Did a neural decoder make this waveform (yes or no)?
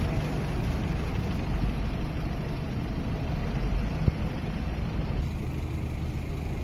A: no